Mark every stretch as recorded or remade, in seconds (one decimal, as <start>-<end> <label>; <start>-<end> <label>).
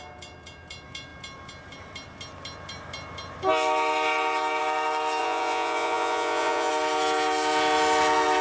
0.0-5.2 recorded; 5.2-6.7 remade; 6.7-8.4 recorded